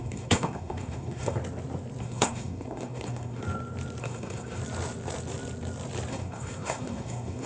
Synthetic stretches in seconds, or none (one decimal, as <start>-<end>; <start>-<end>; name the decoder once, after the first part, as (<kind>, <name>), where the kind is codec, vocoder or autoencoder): 0.0-1.4 (codec, SNAC); 2.0-3.4; 4.0-4.6; 6.1-7.5